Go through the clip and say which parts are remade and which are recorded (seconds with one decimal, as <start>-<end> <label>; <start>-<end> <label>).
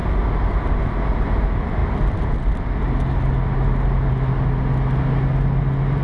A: 0.0-6.0 recorded